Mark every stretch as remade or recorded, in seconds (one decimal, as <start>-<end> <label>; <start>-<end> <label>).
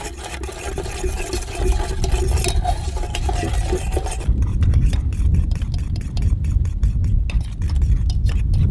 0.0-4.5 recorded; 4.5-6.7 remade; 6.7-8.7 recorded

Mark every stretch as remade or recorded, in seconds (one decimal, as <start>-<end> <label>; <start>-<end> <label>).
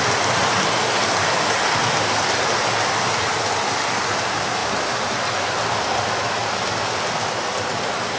0.0-4.6 recorded; 4.6-5.8 remade; 5.8-8.2 recorded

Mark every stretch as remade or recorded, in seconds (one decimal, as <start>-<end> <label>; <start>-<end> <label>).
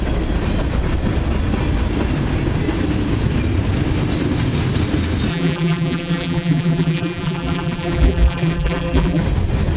0.0-5.3 recorded; 5.3-9.2 remade; 9.2-9.8 recorded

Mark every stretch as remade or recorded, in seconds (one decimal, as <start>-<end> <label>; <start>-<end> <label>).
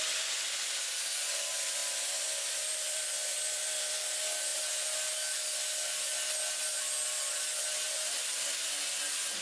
0.0-1.8 recorded; 1.8-3.9 remade; 3.9-9.4 recorded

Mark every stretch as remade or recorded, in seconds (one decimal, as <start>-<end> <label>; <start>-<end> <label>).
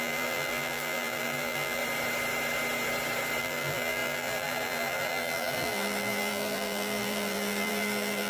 0.0-1.8 remade; 1.8-3.4 recorded; 3.4-8.3 remade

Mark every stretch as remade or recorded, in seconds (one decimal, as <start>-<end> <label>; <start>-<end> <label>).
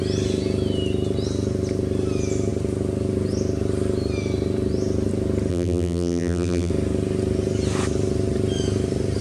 0.0-5.5 recorded; 5.5-6.7 remade; 6.7-9.2 recorded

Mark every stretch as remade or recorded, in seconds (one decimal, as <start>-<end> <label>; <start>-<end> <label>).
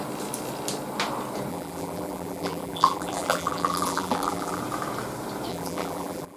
0.0-1.5 recorded; 1.5-4.6 remade; 4.6-5.5 recorded; 5.5-6.4 remade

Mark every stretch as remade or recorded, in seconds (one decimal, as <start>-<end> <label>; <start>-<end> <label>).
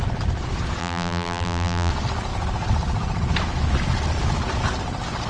0.0-0.8 recorded; 0.8-1.9 remade; 1.9-5.3 recorded